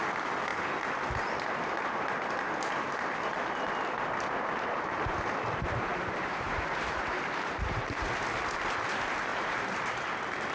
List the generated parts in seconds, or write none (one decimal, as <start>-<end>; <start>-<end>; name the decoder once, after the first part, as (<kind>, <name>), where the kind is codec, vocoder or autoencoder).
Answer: 5.9-8.1 (vocoder, BigVGAN v2); 9.3-10.1

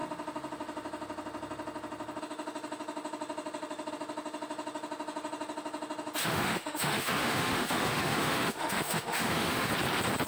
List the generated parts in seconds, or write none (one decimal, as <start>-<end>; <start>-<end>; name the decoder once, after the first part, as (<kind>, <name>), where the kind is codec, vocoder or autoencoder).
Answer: 6.2-9.7 (autoencoder, DAC-VAE)

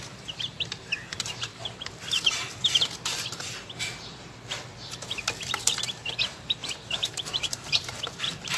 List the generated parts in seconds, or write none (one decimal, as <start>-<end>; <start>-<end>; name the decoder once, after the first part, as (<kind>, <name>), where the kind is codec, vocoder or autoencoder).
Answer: 0.0-1.5 (vocoder, BigVGAN v2); 5.6-8.6